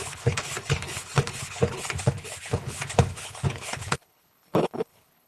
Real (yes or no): no